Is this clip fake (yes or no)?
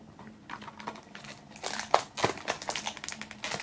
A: no